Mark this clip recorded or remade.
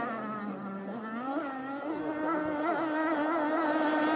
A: recorded